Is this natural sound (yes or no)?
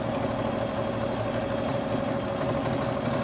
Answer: yes